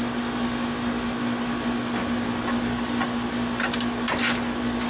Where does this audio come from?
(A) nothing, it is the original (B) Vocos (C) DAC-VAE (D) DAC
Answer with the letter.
A